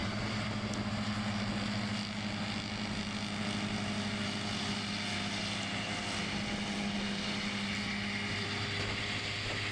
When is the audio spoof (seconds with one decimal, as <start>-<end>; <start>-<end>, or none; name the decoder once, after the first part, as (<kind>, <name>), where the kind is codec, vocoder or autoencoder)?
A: none